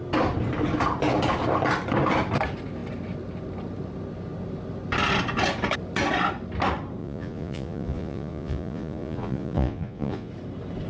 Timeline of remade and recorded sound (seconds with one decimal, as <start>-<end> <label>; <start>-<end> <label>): 0.0-7.0 recorded; 7.0-10.3 remade; 10.3-10.9 recorded